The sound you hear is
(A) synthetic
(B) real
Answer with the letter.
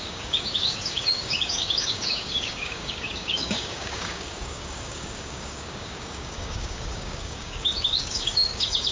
A